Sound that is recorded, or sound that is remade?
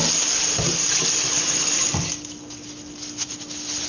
recorded